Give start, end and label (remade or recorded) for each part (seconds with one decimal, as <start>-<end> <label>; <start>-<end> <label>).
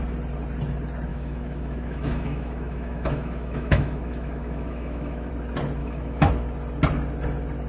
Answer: 0.0-1.1 recorded; 1.1-5.3 remade; 5.3-5.8 recorded; 5.8-6.3 remade; 6.3-7.7 recorded